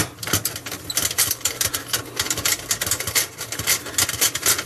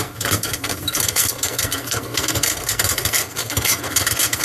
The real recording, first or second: first